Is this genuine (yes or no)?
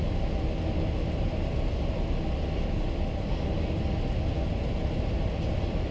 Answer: yes